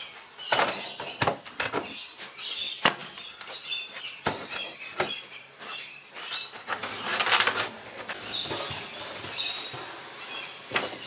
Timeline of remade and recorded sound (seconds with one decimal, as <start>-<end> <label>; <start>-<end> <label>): 0.0-3.0 recorded; 3.0-6.4 remade; 6.4-11.1 recorded